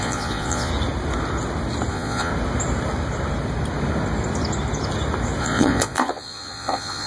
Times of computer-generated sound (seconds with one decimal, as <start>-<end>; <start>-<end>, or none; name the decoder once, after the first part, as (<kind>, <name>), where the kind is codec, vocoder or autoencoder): 0.0-0.7 (vocoder, Vocos); 1.9-2.3; 5.4-7.1

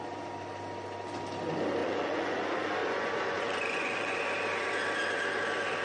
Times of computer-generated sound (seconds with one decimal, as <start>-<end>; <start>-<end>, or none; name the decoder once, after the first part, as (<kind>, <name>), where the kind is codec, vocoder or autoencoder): 1.8-2.4 (vocoder, Vocos); 2.8-4.2